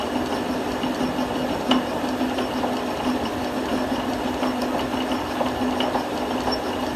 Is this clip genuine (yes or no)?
yes